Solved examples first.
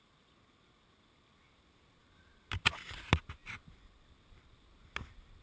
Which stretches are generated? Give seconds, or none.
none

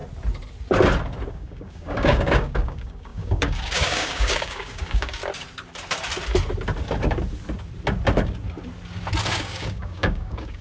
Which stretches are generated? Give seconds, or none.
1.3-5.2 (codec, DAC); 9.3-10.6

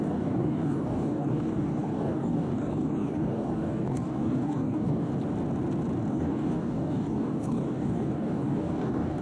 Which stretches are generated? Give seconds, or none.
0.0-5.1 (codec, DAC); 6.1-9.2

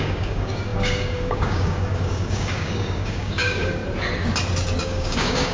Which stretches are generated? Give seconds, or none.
0.0-3.8 (codec, DAC); 4.8-5.5

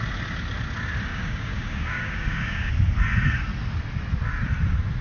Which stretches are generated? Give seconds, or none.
1.1-2.7 (codec, DAC)

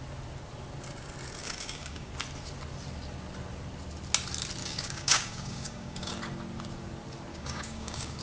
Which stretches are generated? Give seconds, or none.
1.4-2.1 (codec, DAC); 4.6-6.1; 7.3-8.2